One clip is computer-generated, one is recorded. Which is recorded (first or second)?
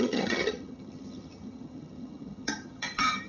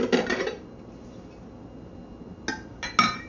second